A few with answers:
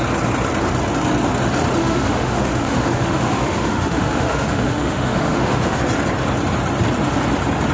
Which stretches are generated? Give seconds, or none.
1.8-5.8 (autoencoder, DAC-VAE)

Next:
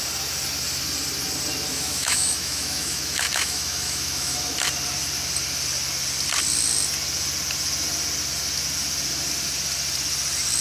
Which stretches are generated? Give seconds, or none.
1.7-4.5 (autoencoder, DAC-VAE)

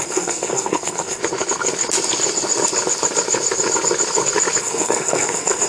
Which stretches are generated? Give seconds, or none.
0.0-1.2 (codec, SNAC); 4.6-5.7

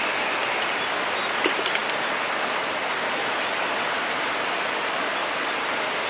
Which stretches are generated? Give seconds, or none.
none

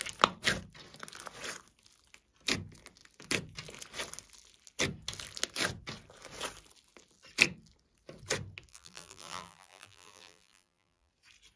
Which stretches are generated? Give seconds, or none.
8.7-11.1 (vocoder, BigVGAN v2)